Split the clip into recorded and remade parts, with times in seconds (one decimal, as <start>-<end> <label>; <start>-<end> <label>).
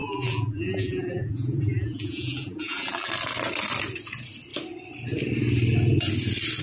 0.0-3.1 remade; 3.1-6.6 recorded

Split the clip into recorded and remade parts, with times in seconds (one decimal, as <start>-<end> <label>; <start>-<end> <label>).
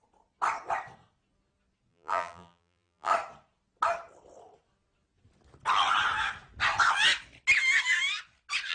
0.0-1.9 recorded; 1.9-3.1 remade; 3.1-8.7 recorded